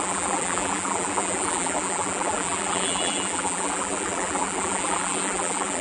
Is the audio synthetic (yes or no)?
yes